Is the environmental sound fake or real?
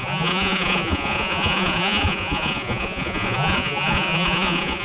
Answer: fake